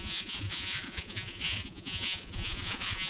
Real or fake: fake